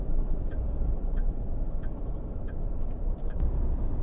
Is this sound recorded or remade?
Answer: remade